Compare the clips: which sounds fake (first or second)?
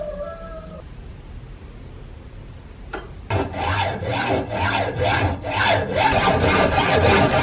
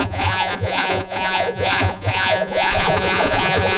second